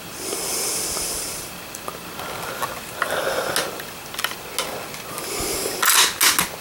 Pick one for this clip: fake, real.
real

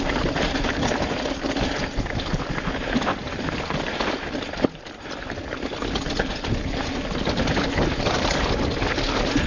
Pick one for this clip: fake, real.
real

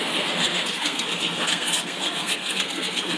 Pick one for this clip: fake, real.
fake